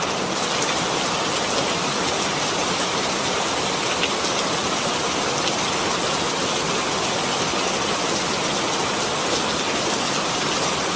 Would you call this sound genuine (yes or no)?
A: yes